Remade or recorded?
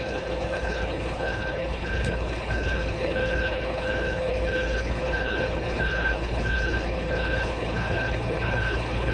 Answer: remade